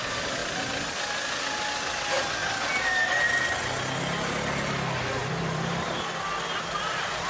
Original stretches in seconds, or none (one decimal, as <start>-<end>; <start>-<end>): 0.0-0.4; 0.9-5.2; 6.0-7.3

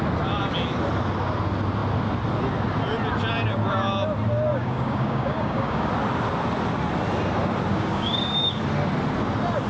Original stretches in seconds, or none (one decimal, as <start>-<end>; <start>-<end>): 0.0-4.5; 5.9-7.7; 8.6-9.7